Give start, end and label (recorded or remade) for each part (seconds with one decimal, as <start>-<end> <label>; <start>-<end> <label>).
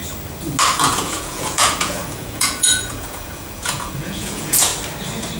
0.0-0.8 recorded; 0.8-4.7 remade; 4.7-5.4 recorded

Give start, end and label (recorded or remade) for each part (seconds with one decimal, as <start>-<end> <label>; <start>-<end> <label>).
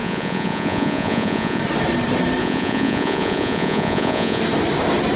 0.0-1.6 remade; 1.6-2.4 recorded; 2.4-4.4 remade; 4.4-5.2 recorded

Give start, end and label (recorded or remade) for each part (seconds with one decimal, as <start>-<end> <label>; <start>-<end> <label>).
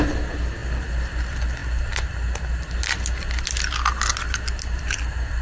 0.0-5.4 recorded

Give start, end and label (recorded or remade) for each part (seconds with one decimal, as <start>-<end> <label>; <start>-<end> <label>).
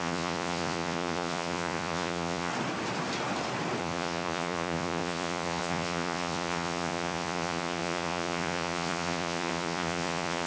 0.0-2.5 remade; 2.5-3.8 recorded; 3.8-10.5 remade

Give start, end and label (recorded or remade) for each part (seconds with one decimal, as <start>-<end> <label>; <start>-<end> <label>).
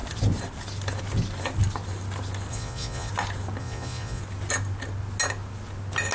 0.0-2.5 recorded; 2.5-3.1 remade; 3.1-3.6 recorded; 3.6-4.2 remade; 4.2-6.1 recorded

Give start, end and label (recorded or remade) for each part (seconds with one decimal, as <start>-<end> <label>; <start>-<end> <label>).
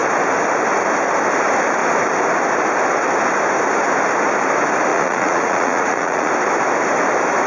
0.0-4.9 recorded; 4.9-6.3 remade; 6.3-7.5 recorded